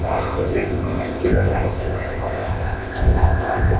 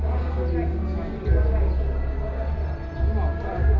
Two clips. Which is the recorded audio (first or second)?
second